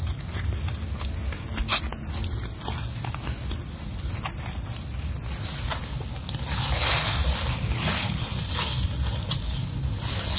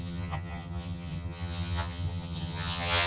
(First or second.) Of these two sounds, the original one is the first